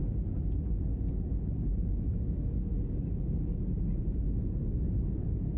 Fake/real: real